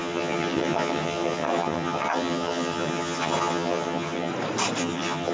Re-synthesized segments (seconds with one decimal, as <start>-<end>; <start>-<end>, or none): 0.0-4.3; 4.8-5.3